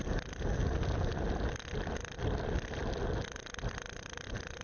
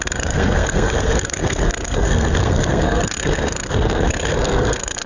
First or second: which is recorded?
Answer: first